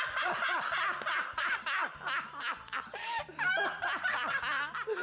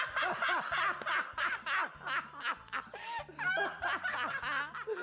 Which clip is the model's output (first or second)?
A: first